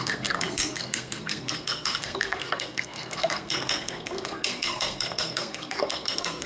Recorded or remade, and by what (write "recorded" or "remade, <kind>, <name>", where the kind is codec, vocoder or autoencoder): remade, codec, SNAC